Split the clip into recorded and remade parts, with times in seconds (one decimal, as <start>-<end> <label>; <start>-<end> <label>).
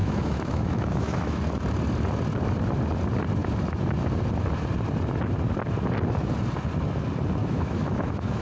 0.0-1.4 remade; 1.4-7.4 recorded; 7.4-8.4 remade